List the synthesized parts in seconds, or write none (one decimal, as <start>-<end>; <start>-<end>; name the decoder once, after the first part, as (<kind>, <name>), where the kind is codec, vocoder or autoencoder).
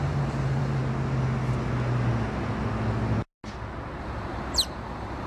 0.0-0.8 (vocoder, BigVGAN v2); 4.0-5.3